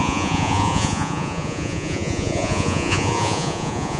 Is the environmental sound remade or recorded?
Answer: remade